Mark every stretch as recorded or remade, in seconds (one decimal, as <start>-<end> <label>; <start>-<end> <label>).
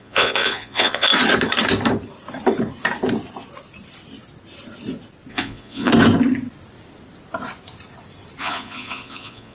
0.0-1.1 remade; 1.1-5.3 recorded; 5.3-5.9 remade; 5.9-8.4 recorded; 8.4-9.5 remade